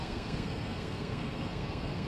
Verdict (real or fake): fake